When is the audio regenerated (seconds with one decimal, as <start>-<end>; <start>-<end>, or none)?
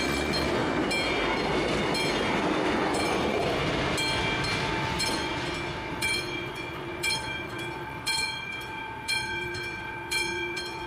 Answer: 0.0-0.6; 2.7-3.6; 4.8-5.3; 5.9-10.9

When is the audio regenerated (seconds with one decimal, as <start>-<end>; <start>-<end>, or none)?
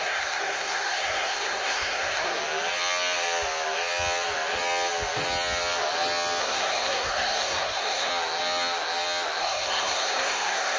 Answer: 0.0-2.4; 6.4-8.1; 9.4-10.8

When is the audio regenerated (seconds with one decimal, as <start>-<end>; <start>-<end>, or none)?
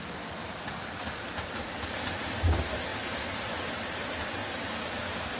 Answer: 0.0-2.9; 3.7-4.4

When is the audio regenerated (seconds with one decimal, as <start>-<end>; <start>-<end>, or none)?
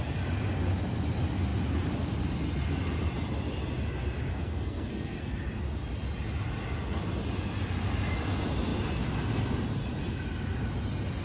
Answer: 4.3-5.4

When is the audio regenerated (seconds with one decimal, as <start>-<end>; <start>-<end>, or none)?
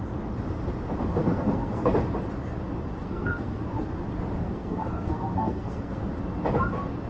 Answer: 1.2-1.9; 3.0-3.6; 4.4-6.0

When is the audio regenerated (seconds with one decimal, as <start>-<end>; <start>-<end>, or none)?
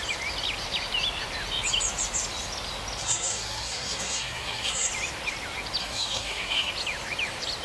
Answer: 3.0-4.9; 5.8-6.7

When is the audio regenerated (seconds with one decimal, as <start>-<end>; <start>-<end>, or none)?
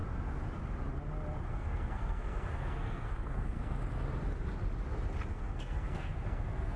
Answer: 1.5-3.8; 5.3-6.8